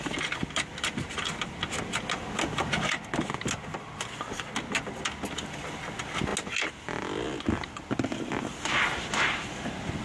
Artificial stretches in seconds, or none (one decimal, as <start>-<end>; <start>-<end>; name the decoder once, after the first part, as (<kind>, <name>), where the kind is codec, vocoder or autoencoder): none